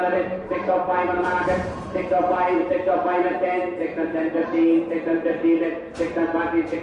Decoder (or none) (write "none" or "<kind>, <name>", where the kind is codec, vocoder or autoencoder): vocoder, BigVGAN v2